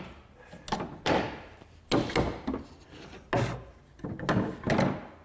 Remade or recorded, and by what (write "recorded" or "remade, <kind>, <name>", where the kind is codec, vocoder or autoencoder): recorded